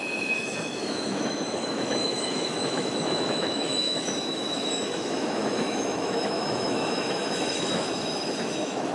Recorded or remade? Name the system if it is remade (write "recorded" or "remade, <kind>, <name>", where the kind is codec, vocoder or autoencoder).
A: remade, autoencoder, DAC-VAE